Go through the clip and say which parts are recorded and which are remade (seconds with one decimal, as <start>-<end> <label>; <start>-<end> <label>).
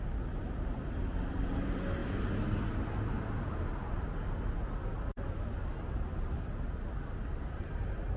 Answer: 0.0-8.2 recorded